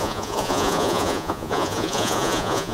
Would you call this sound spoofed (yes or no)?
yes